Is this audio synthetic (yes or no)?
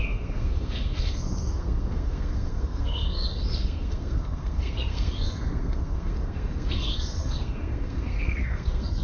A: yes